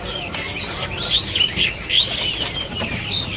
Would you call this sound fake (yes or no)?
no